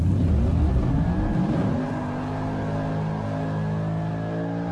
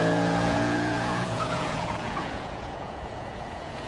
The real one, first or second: first